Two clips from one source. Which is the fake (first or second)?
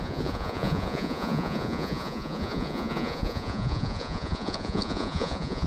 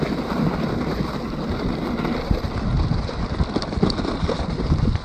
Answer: first